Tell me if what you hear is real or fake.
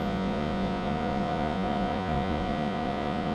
fake